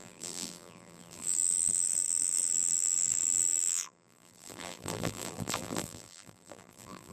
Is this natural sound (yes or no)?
no